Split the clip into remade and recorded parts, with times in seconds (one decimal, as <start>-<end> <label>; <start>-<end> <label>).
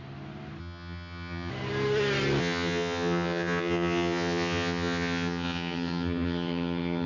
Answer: 0.0-0.6 recorded; 0.6-1.5 remade; 1.5-2.4 recorded; 2.4-7.1 remade